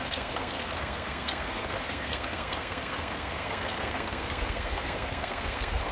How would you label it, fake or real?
fake